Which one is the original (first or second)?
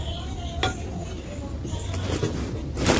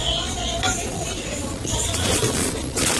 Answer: first